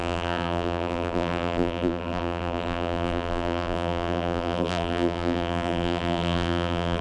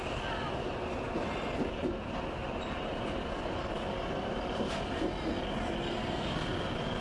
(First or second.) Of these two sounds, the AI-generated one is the first